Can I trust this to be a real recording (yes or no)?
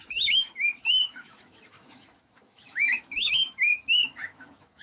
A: no